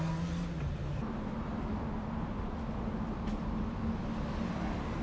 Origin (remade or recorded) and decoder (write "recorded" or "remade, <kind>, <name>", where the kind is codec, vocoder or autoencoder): recorded